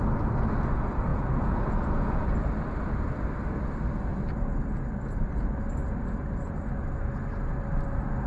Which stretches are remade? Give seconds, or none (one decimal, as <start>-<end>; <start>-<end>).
1.1-2.2